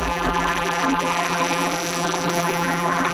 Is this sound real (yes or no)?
no